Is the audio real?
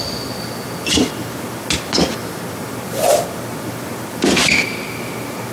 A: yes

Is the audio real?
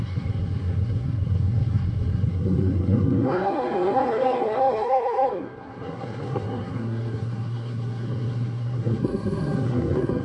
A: no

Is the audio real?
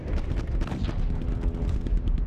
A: yes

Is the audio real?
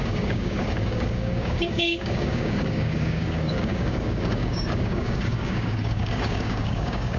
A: no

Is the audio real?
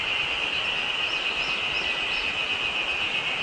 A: yes